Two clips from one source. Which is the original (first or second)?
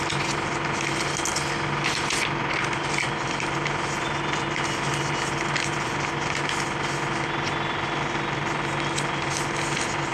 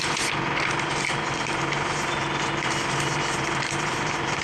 first